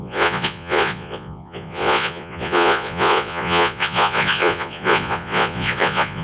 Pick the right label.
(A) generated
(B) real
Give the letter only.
A